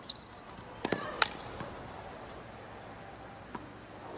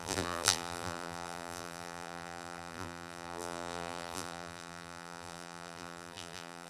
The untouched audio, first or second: first